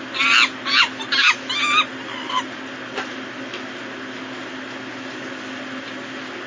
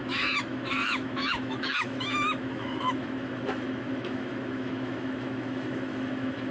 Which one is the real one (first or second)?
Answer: first